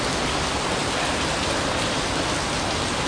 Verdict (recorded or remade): recorded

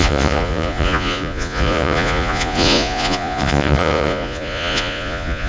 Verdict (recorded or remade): remade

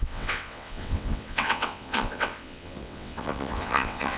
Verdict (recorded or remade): remade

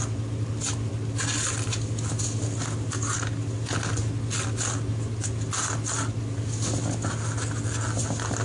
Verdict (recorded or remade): recorded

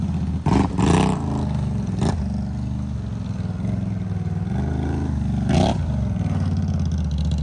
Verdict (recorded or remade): recorded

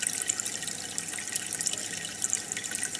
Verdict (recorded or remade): recorded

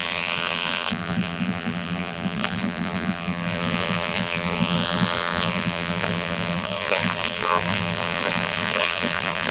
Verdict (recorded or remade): remade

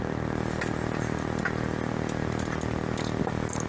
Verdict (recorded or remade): recorded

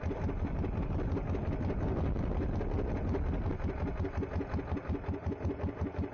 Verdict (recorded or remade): recorded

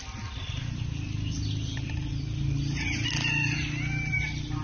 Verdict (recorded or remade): recorded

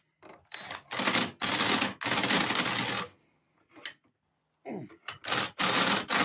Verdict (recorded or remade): recorded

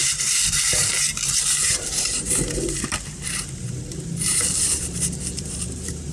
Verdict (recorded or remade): remade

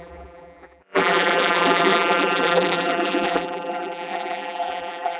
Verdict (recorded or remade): remade